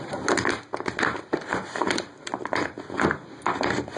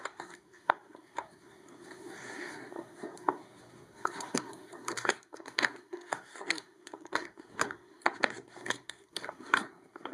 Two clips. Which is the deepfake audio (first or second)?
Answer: second